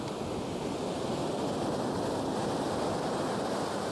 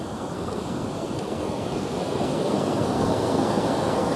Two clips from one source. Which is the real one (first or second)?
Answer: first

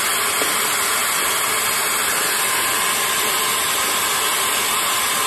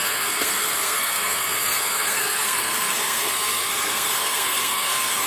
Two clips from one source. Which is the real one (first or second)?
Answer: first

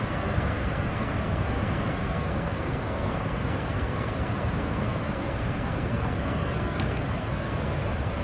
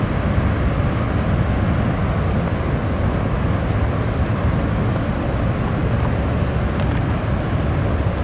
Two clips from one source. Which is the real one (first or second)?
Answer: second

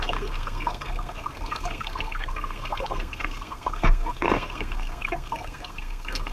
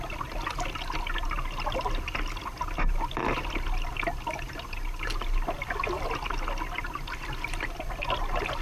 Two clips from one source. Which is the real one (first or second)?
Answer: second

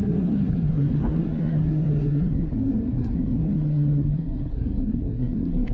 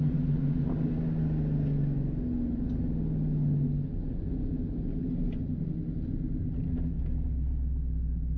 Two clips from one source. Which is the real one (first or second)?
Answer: second